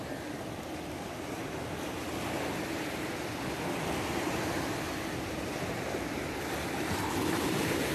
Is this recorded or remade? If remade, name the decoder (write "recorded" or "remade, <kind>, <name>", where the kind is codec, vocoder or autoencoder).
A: recorded